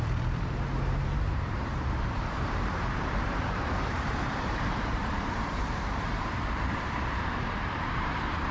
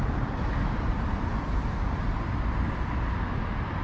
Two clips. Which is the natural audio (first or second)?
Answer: second